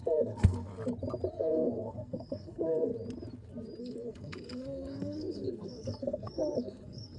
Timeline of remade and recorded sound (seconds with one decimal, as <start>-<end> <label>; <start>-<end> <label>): 0.0-0.7 remade; 0.7-1.3 recorded; 1.3-2.9 remade; 2.9-3.8 recorded; 3.8-7.2 remade